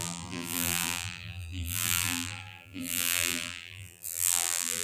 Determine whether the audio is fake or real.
fake